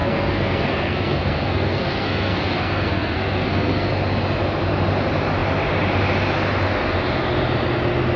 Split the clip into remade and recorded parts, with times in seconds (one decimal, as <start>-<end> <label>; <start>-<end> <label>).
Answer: 0.0-3.9 remade; 3.9-8.2 recorded